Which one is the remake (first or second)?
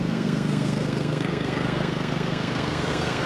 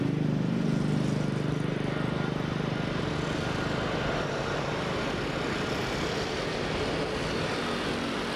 first